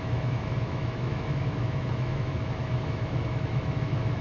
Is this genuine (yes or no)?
no